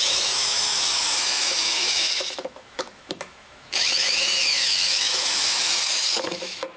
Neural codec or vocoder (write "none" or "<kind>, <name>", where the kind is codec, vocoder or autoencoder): autoencoder, DAC-VAE